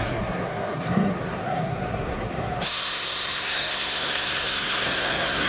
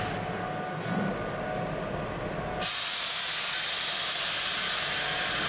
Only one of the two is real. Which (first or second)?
second